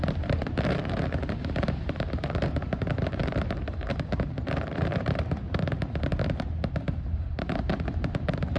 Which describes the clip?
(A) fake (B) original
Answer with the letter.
A